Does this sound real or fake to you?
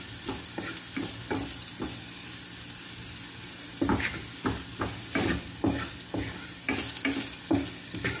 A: real